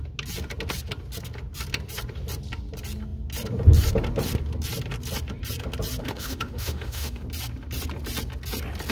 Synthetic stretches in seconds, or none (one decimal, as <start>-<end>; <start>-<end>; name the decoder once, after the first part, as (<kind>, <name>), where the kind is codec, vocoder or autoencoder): 6.0-7.2 (autoencoder, DAC-VAE)